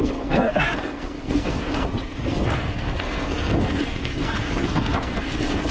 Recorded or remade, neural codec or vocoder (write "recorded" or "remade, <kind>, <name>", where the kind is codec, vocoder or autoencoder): remade, codec, SNAC